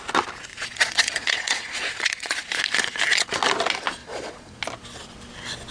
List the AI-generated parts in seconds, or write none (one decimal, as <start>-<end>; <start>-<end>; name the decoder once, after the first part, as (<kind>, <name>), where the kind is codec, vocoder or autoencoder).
0.5-2.6 (vocoder, Vocos); 4.0-4.6

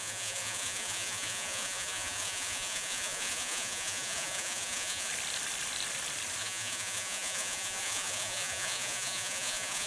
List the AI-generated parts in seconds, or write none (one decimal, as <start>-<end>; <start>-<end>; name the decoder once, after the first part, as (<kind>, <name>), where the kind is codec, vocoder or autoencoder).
0.0-5.1 (vocoder, Vocos); 6.4-9.9